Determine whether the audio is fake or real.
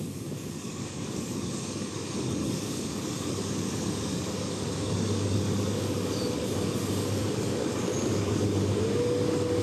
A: fake